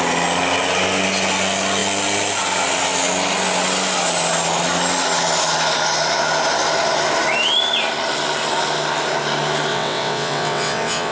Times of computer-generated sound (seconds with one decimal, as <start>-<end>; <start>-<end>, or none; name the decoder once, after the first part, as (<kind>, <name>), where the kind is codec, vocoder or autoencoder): 9.7-11.1 (vocoder, WaveNeXt)